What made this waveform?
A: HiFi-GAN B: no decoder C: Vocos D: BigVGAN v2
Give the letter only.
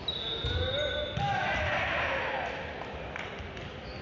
B